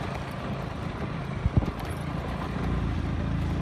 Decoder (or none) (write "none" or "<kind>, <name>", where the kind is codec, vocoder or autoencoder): none